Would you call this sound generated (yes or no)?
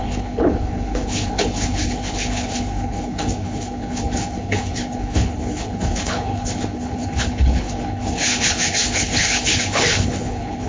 yes